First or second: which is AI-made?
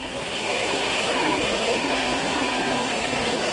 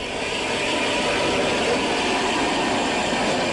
first